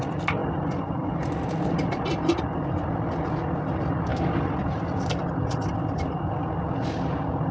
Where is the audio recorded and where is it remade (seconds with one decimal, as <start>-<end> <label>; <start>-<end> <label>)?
0.0-0.4 recorded; 0.4-2.4 remade; 2.4-4.1 recorded; 4.1-6.2 remade; 6.2-7.5 recorded